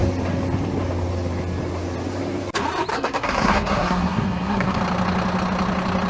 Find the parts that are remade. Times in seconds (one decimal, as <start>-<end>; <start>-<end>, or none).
2.9-4.8